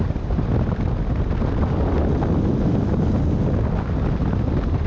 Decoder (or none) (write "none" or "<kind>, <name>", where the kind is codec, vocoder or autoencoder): none